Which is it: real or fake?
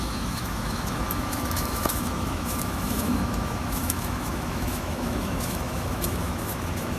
fake